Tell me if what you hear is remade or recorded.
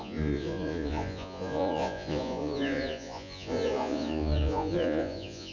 remade